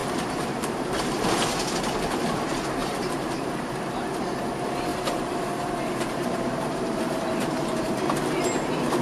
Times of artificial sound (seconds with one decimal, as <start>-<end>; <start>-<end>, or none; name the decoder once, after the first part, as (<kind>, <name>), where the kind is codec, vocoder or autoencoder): 0.0-1.4 (vocoder, BigVGAN v2); 2.8-3.7; 4.9-8.0